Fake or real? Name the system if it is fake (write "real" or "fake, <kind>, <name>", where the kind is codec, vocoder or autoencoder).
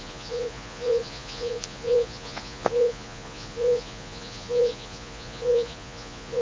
fake, vocoder, Vocos